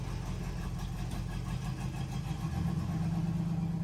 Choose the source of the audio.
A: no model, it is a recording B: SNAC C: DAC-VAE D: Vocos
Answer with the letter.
A